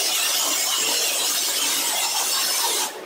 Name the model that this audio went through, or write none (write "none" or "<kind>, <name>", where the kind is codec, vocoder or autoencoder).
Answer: none